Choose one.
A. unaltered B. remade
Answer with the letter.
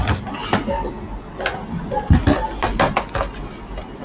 A